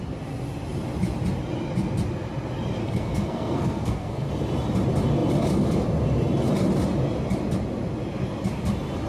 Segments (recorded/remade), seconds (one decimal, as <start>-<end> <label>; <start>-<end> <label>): 0.0-2.8 recorded; 2.8-4.3 remade; 4.3-9.1 recorded